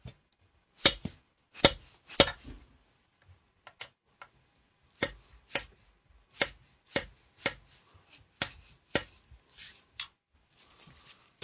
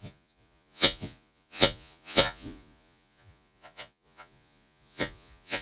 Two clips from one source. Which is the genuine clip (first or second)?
first